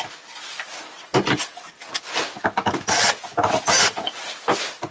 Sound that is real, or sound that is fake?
real